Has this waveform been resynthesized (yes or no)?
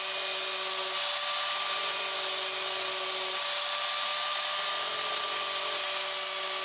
no